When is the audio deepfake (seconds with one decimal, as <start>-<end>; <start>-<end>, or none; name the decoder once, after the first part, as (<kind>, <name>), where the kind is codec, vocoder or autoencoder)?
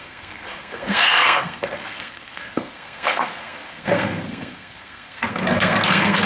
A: 0.0-6.3 (codec, SNAC)